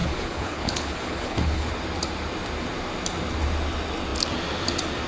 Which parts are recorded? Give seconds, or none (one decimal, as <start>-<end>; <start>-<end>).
1.7-5.1